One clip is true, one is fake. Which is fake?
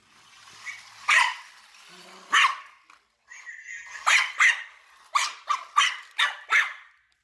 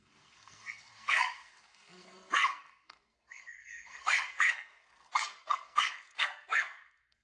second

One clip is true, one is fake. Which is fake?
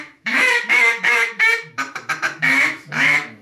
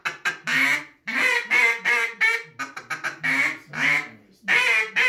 first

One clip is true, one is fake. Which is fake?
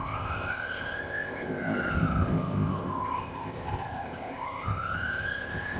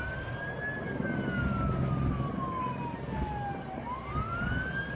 first